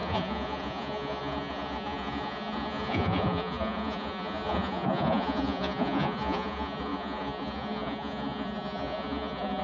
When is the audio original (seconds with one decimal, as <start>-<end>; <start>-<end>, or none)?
none